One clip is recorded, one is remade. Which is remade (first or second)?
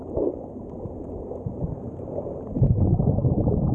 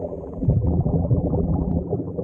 second